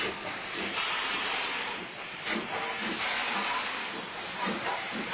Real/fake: fake